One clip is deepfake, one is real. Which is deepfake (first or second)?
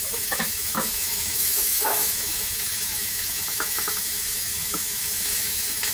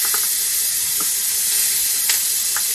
first